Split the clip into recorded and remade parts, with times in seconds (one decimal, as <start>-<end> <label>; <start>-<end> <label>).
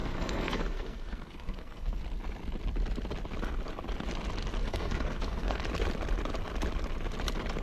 0.0-2.0 remade; 2.0-4.6 recorded; 4.6-5.6 remade; 5.6-7.6 recorded